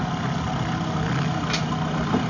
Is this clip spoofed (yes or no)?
no